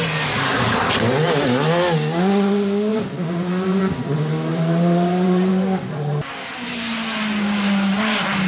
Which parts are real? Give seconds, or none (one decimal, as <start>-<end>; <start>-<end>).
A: 0.0-2.9; 3.8-4.5; 5.5-8.5